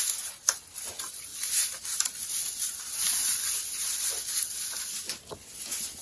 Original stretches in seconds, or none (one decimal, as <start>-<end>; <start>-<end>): none